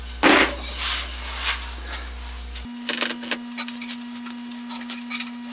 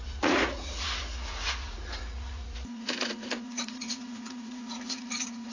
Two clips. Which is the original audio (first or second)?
first